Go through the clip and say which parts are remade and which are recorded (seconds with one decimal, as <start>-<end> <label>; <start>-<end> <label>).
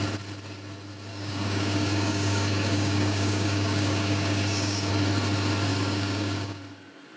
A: 0.0-1.1 recorded; 1.1-4.9 remade; 4.9-5.7 recorded; 5.7-6.6 remade; 6.6-7.2 recorded